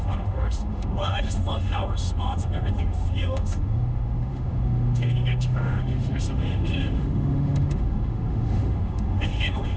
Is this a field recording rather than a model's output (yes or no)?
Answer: no